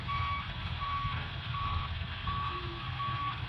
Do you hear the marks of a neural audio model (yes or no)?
yes